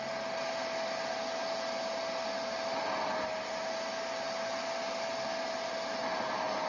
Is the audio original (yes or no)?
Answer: yes